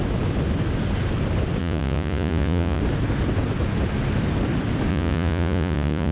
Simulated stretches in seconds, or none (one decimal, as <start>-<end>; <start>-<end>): 1.6-2.8; 4.9-6.1